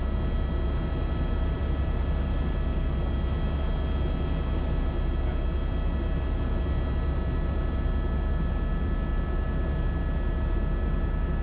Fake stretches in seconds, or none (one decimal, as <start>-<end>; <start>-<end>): none